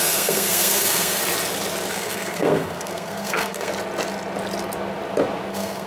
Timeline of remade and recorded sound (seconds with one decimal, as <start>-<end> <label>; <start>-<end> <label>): 0.0-1.2 remade; 1.2-1.9 recorded; 1.9-3.7 remade; 3.7-5.5 recorded; 5.5-5.9 remade